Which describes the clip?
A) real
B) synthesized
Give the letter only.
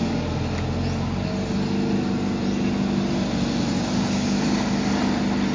A